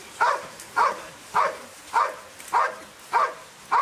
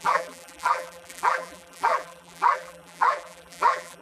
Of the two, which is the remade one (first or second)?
second